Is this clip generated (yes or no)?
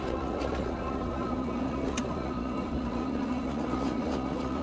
yes